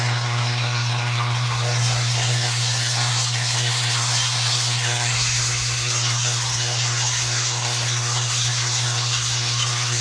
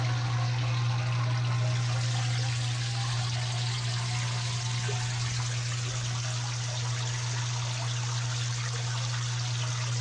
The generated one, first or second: first